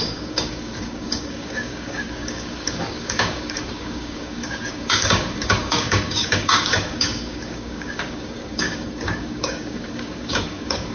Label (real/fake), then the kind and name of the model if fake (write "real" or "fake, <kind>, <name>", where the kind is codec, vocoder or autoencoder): fake, codec, DAC